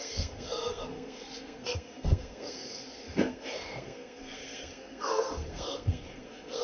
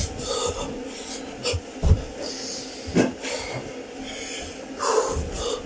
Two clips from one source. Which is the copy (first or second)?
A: first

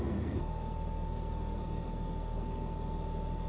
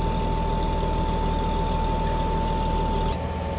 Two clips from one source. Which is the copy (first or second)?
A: first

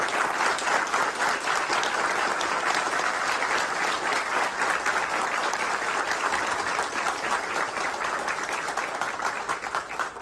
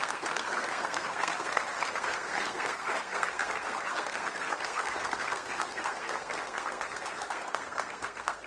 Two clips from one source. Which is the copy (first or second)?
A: second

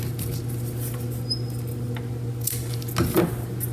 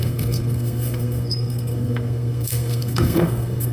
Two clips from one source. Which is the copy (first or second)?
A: second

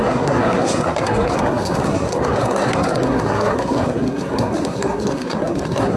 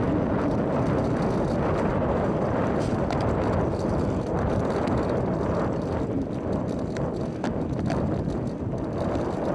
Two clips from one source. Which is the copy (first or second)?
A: first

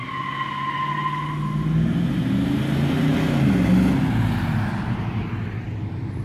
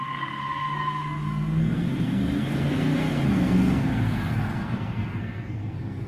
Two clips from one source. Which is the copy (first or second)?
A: second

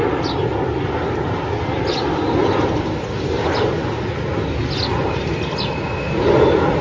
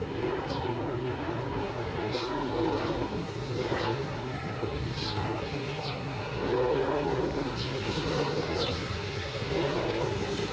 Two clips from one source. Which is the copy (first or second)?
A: second